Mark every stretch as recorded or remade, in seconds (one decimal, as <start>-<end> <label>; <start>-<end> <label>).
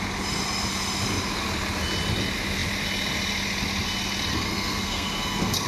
0.0-4.3 recorded; 4.3-5.7 remade